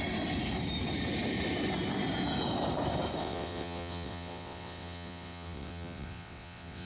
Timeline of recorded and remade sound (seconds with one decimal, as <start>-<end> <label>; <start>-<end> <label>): 0.0-3.2 recorded; 3.2-6.9 remade